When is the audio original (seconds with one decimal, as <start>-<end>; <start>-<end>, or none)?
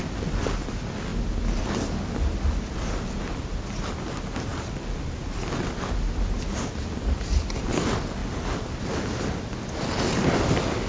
0.0-10.9